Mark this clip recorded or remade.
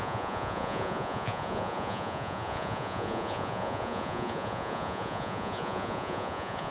remade